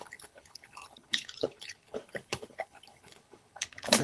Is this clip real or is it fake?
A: fake